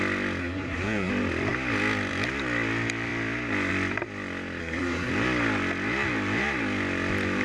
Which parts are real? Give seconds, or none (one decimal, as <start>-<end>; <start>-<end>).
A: 0.0-0.4; 1.1-4.6; 5.1-7.4